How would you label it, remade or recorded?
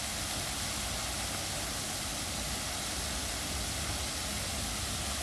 recorded